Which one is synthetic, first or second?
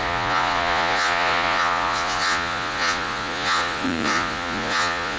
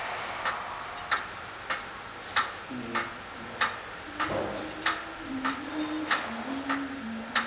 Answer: first